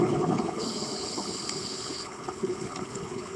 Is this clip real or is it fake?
fake